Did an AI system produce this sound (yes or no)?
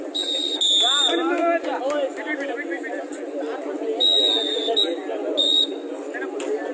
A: no